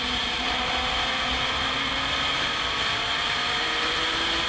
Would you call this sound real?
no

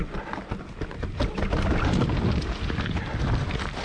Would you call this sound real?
yes